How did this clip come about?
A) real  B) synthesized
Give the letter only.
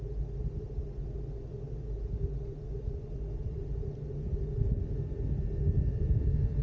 A